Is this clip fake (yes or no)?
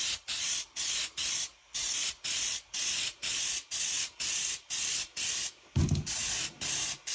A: yes